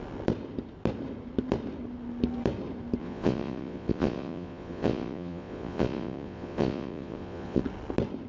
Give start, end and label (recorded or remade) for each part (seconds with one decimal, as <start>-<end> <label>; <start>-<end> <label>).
0.0-3.0 recorded; 3.0-7.6 remade; 7.6-8.3 recorded